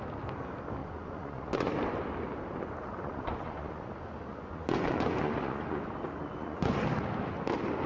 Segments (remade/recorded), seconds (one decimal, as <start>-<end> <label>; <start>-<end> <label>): 0.0-0.8 recorded; 0.8-1.8 remade; 1.8-2.9 recorded; 2.9-3.9 remade; 3.9-4.3 recorded; 4.3-5.8 remade; 5.8-6.2 recorded; 6.2-6.8 remade; 6.8-7.9 recorded